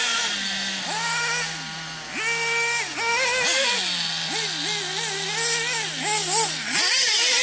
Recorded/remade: recorded